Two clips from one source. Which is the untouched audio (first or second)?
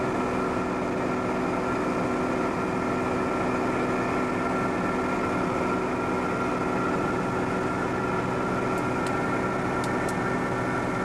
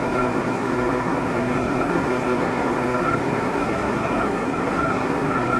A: first